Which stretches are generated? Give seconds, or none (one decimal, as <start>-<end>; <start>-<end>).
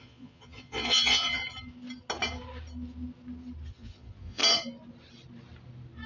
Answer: 0.0-1.4; 3.7-4.4